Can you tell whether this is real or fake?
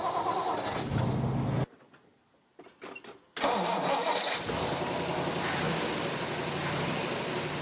real